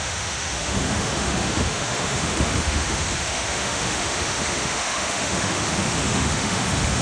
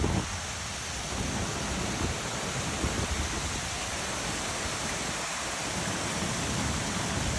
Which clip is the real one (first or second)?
second